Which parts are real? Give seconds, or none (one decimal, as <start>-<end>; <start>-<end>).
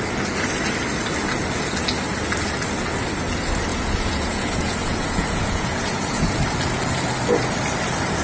0.0-3.7; 6.3-8.2